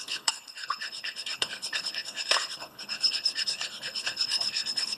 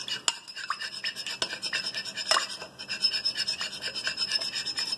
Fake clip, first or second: first